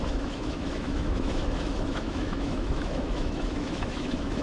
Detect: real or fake fake